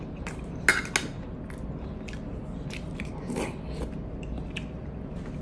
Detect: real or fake real